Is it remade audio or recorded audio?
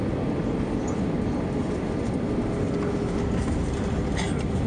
recorded